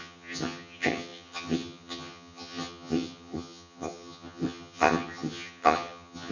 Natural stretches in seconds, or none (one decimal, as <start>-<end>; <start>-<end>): none

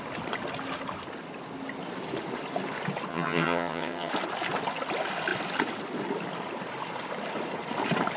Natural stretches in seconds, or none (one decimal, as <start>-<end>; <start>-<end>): 0.0-3.1; 4.1-8.2

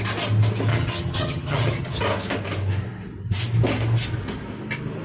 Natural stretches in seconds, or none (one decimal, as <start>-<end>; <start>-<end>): 0.0-0.7; 2.0-5.0

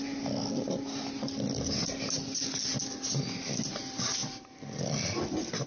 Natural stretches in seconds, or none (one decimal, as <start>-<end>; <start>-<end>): 0.0-5.7

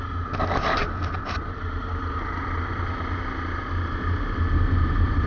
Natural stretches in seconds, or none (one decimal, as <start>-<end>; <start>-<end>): 0.0-5.3